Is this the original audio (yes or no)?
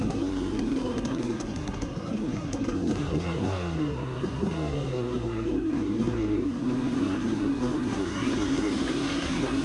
no